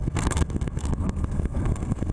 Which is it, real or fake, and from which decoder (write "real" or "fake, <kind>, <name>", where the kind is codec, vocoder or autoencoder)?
fake, codec, SNAC